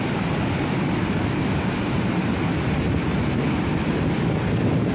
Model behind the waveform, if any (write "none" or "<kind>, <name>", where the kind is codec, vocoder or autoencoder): none